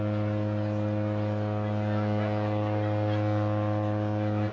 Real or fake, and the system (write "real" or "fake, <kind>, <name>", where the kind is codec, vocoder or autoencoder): real